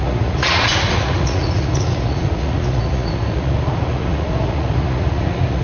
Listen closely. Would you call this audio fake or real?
fake